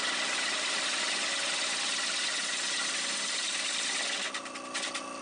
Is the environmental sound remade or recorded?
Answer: recorded